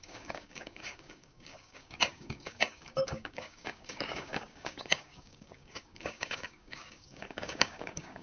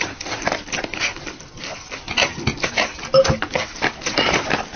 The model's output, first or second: first